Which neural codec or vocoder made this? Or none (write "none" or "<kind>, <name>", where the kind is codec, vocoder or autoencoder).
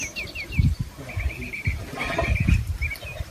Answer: vocoder, BigVGAN v2